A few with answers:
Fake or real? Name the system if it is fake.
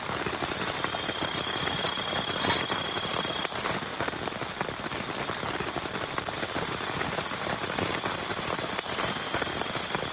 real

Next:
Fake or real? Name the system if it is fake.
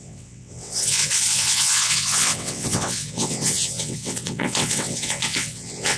fake, vocoder, WaveNeXt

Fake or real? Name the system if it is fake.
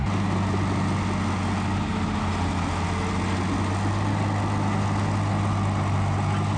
real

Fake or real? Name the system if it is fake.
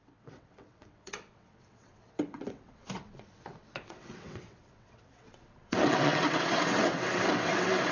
fake, vocoder, WaveNeXt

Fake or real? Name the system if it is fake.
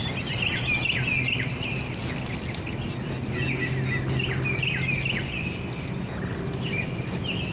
real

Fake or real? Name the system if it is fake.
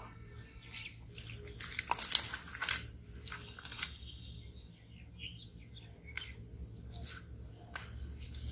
real